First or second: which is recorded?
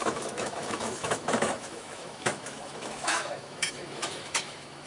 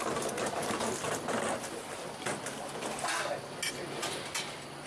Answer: second